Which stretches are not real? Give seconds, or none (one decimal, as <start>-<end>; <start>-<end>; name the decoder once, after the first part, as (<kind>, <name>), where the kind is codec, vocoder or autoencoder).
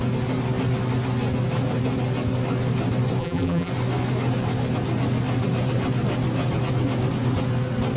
3.2-3.7 (vocoder, BigVGAN v2)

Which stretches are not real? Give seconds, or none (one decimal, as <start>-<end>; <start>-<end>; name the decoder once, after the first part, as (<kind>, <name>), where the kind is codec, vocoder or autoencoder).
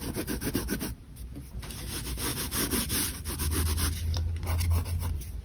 2.3-4.3 (vocoder, BigVGAN v2)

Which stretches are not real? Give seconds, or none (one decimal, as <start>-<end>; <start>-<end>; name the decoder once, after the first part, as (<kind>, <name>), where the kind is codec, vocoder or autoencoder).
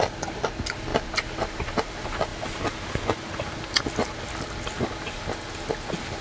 none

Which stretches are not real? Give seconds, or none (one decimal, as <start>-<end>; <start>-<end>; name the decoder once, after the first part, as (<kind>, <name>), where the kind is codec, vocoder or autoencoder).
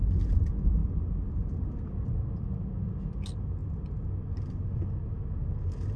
0.8-1.3 (vocoder, BigVGAN v2)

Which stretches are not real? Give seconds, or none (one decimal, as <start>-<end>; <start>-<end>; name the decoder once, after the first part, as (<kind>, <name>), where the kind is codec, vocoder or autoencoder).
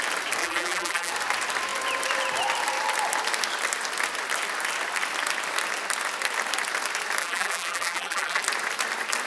0.4-1.1 (vocoder, BigVGAN v2); 7.2-8.4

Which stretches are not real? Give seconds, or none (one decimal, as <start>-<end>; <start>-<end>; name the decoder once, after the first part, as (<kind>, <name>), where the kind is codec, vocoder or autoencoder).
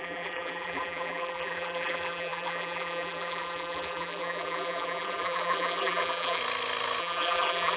0.0-6.4 (vocoder, BigVGAN v2); 7.0-7.8